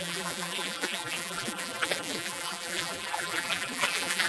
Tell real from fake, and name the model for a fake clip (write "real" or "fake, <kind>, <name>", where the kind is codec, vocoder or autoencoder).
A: fake, vocoder, BigVGAN v2